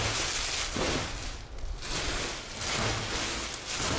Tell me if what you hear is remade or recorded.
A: recorded